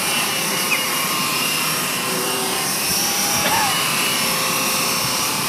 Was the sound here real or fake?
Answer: fake